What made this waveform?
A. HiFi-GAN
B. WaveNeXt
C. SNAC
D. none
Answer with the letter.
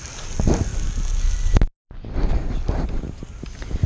D